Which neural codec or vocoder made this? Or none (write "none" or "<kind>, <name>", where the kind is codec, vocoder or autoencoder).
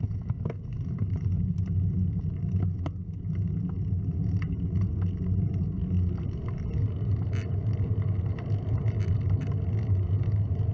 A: none